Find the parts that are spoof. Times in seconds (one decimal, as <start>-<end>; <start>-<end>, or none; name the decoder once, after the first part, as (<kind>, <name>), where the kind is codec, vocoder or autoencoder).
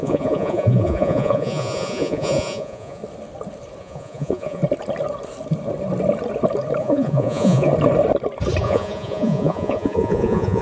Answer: 0.0-3.0 (vocoder, Vocos); 3.8-4.6; 6.8-7.7; 8.6-10.6